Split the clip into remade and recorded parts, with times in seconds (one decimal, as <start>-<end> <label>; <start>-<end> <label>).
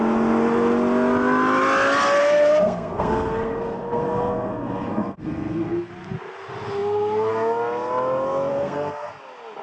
0.0-2.2 recorded; 2.2-5.9 remade; 5.9-8.5 recorded; 8.5-9.1 remade; 9.1-9.6 recorded